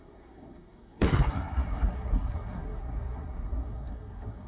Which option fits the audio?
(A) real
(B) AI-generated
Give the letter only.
B